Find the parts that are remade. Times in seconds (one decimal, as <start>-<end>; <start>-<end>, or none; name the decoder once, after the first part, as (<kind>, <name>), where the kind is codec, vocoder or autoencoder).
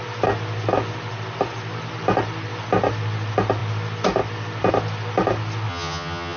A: 5.7-6.4 (vocoder, HiFi-GAN)